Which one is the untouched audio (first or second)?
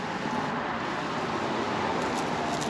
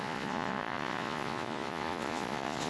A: first